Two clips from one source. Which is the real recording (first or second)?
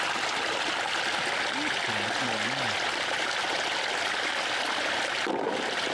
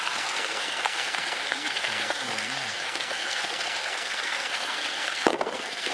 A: first